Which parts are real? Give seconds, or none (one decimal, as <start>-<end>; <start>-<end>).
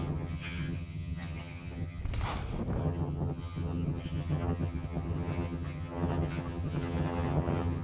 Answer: 2.0-2.8